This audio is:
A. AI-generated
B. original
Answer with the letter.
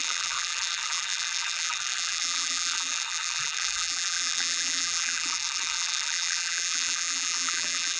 A